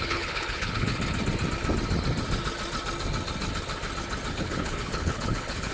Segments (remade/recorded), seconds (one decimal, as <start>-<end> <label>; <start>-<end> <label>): 0.0-0.9 remade; 0.9-4.3 recorded; 4.3-5.7 remade